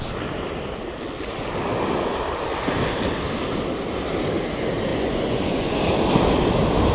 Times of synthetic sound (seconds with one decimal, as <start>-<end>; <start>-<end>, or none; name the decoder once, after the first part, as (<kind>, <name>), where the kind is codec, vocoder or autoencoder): 4.9-5.8 (vocoder, Vocos)

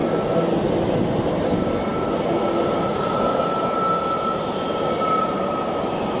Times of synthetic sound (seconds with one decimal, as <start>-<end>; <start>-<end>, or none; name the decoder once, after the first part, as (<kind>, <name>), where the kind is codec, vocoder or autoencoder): none